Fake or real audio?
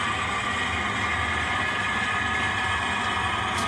real